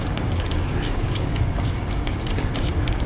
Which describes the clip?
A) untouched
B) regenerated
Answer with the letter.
B